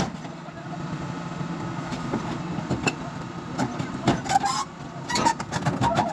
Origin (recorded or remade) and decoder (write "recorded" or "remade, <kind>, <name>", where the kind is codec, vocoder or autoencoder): recorded